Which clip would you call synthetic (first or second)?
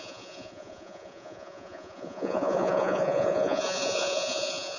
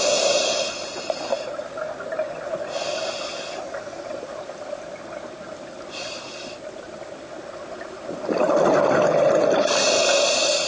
first